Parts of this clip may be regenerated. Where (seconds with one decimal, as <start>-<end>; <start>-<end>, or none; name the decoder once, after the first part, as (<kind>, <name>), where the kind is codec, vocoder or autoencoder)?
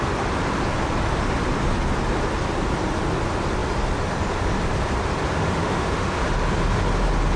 5.4-6.2 (autoencoder, DAC-VAE)